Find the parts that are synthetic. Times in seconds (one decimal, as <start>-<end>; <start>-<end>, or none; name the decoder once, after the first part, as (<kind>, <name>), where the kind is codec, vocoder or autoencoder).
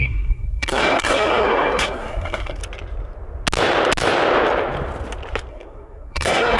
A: 0.0-2.6 (codec, SNAC); 5.5-6.6